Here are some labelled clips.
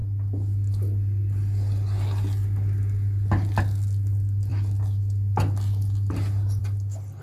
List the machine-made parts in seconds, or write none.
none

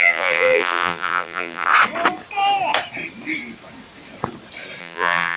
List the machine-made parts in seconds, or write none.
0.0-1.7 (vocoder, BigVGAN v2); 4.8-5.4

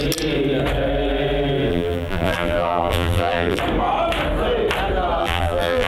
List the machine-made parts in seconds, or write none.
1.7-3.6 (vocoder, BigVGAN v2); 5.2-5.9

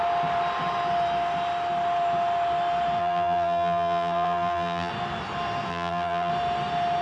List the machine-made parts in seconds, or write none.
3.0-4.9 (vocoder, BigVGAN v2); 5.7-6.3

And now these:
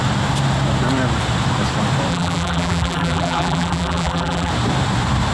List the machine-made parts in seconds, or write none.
2.1-4.5 (vocoder, BigVGAN v2)